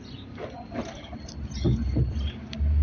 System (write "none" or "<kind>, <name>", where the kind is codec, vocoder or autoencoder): none